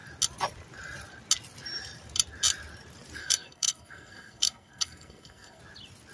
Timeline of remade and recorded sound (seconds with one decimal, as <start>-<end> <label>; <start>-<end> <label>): 0.0-3.2 recorded; 3.2-5.6 remade; 5.6-6.1 recorded